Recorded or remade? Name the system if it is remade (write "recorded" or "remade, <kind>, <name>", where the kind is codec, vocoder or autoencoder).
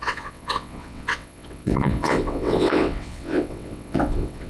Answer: remade, vocoder, WaveNeXt